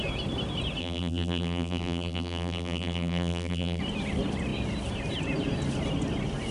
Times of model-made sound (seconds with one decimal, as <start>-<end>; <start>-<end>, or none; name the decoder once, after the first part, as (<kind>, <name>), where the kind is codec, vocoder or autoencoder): 0.8-3.8 (vocoder, BigVGAN v2)